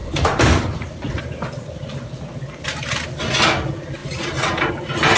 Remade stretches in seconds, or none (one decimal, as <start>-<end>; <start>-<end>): 0.0-1.2